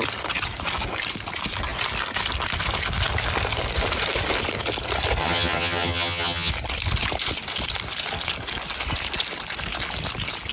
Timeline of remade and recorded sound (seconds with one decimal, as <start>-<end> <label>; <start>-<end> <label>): 0.0-5.2 recorded; 5.2-6.5 remade; 6.5-10.5 recorded